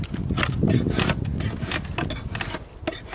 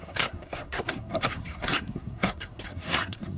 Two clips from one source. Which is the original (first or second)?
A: first